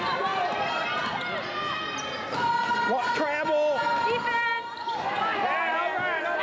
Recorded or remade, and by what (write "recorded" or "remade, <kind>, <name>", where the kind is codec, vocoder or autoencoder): recorded